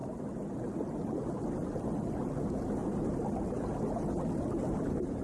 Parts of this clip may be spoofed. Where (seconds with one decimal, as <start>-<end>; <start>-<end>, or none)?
none